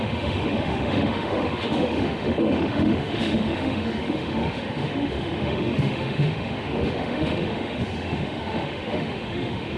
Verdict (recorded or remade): remade